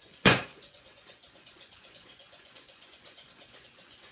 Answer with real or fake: fake